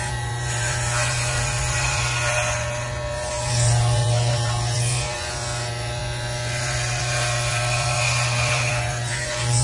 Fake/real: fake